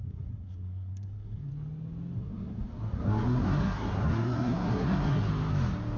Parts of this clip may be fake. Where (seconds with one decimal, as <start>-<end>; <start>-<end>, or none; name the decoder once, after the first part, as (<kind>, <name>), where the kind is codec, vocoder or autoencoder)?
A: 0.0-1.5 (codec, SNAC); 2.2-5.3